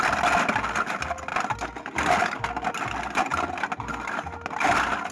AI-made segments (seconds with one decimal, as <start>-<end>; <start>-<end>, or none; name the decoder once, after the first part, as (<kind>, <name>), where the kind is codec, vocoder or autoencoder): none